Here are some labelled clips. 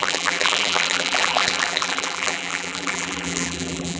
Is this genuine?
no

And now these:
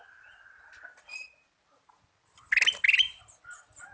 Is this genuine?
yes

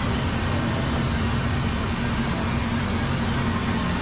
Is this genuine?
yes